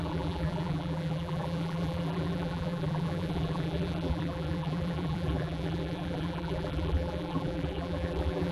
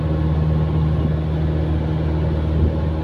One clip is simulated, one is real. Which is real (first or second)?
second